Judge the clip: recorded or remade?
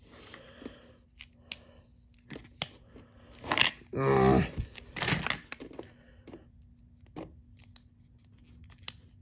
recorded